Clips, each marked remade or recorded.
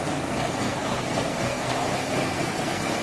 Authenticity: remade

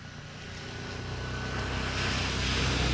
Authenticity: recorded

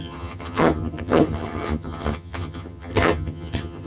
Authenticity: remade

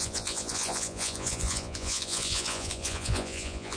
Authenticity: remade